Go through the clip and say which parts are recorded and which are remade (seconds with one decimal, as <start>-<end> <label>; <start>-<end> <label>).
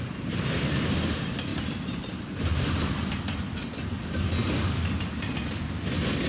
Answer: 0.0-1.5 recorded; 1.5-2.2 remade; 2.2-6.3 recorded